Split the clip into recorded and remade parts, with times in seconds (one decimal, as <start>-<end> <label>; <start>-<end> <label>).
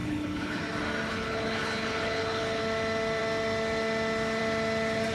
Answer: 0.0-0.6 remade; 0.6-1.1 recorded; 1.1-2.6 remade; 2.6-5.1 recorded